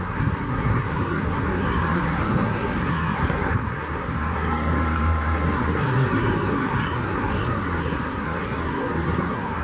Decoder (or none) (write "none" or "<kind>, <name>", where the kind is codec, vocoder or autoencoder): codec, SNAC